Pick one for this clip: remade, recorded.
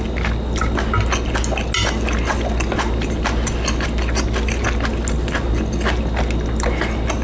recorded